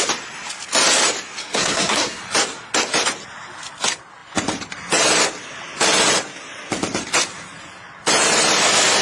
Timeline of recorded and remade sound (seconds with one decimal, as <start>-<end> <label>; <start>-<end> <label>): 0.0-1.4 recorded; 1.4-2.2 remade; 2.2-9.0 recorded